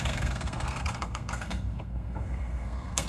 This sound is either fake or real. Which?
fake